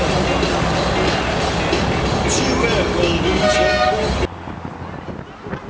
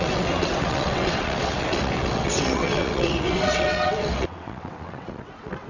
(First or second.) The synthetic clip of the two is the second